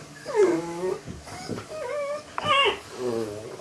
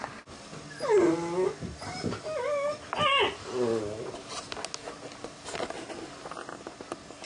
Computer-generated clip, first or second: first